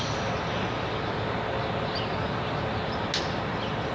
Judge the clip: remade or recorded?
recorded